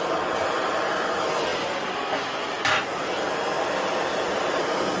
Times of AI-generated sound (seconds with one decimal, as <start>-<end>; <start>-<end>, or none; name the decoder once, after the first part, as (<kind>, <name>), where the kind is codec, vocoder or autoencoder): none